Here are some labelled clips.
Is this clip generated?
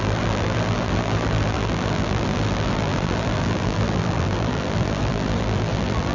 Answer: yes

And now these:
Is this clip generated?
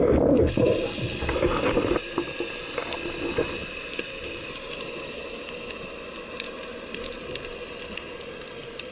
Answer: no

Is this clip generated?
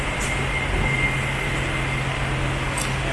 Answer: no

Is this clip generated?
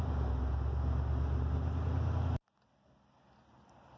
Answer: no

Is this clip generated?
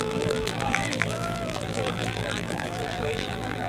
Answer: yes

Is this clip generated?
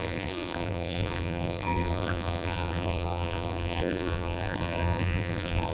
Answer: yes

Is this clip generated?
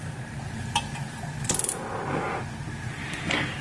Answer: no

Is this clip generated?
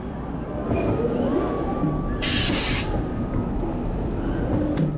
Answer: no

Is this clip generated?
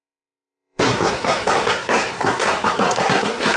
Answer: yes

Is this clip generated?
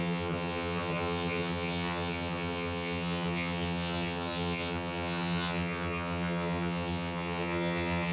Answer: yes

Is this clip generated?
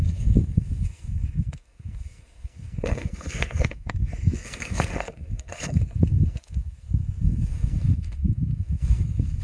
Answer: yes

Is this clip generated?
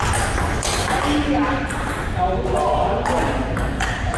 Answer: no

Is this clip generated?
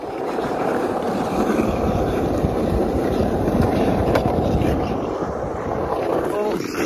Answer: yes